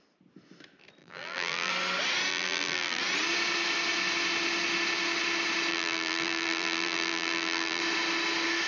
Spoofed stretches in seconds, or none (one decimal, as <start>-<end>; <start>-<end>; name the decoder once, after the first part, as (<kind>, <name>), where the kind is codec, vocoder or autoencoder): 1.0-1.7 (vocoder, BigVGAN v2); 2.3-3.0; 5.7-7.8